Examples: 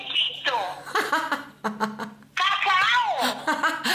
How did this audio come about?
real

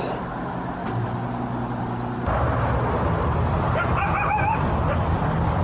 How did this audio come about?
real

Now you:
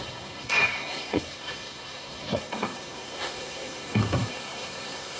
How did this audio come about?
fake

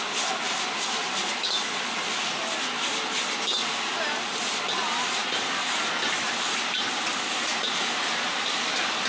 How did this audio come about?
real